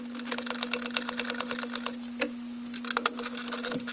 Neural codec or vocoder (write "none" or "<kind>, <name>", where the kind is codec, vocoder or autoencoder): none